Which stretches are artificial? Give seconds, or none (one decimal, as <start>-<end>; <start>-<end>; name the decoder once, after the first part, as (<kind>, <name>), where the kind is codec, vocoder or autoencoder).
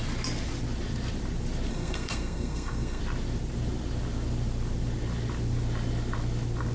1.7-3.0 (codec, SNAC)